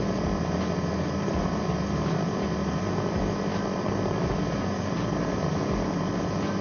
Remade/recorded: recorded